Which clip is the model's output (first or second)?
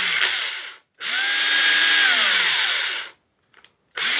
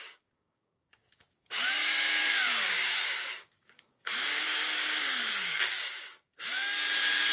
second